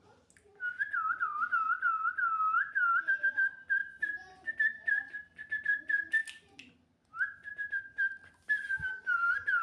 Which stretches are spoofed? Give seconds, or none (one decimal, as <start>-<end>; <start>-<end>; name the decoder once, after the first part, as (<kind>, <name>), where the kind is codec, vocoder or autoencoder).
none